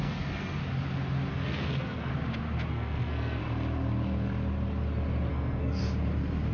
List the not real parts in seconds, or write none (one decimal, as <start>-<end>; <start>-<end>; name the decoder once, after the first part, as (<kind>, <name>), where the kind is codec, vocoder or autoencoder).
0.0-0.6 (codec, SNAC); 1.3-2.1; 2.7-3.4; 5.3-5.8